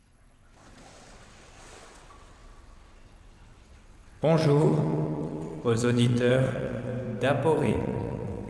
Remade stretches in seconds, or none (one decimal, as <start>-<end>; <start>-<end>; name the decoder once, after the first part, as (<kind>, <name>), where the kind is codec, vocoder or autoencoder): 0.0-6.9 (vocoder, WaveNeXt); 7.6-8.5